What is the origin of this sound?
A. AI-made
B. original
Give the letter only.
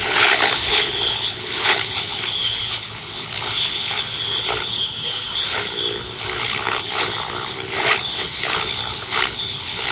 A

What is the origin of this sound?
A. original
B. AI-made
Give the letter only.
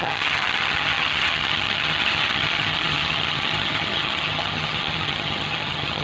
B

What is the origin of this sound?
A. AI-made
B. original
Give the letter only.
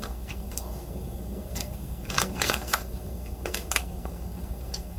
A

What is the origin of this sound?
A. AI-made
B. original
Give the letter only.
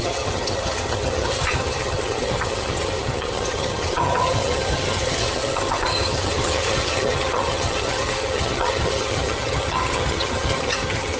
A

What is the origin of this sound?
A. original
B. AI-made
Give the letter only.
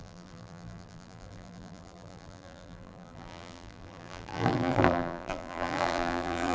B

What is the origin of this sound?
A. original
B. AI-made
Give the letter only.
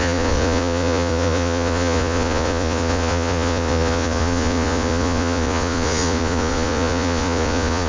B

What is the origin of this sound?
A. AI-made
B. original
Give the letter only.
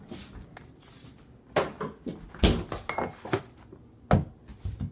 B